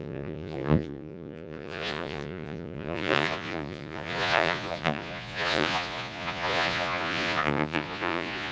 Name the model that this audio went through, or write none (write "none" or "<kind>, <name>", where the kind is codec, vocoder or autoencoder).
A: vocoder, Vocos